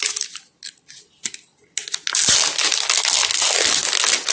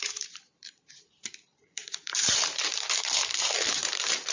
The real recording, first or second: first